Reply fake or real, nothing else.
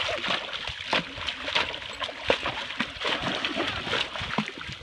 real